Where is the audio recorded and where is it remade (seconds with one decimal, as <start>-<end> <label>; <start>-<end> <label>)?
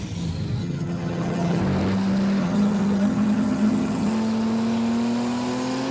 0.0-0.6 recorded; 0.6-1.6 remade; 1.6-2.4 recorded; 2.4-4.1 remade; 4.1-5.9 recorded